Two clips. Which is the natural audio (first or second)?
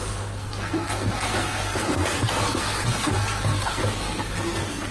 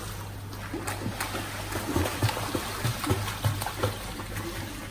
second